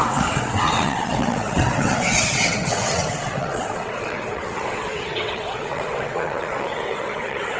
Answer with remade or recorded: remade